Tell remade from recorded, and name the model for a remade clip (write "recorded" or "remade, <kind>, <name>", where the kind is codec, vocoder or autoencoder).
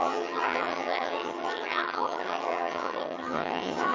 remade, vocoder, HiFi-GAN